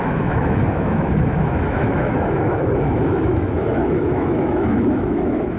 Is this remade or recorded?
remade